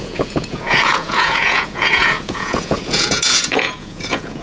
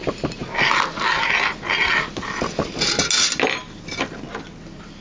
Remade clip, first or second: first